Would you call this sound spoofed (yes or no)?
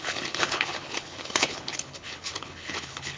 yes